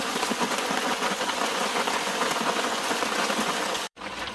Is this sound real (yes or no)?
no